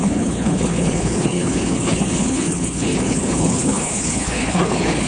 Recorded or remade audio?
remade